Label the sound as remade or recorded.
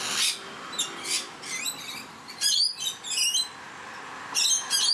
recorded